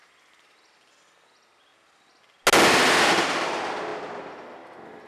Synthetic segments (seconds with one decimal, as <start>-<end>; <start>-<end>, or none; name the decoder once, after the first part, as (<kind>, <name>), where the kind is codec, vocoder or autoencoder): none